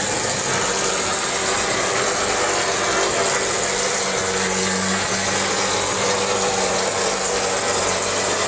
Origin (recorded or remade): recorded